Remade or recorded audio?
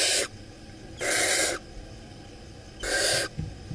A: recorded